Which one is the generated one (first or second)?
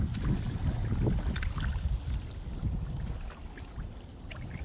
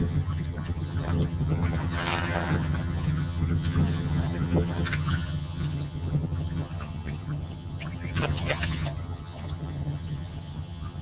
second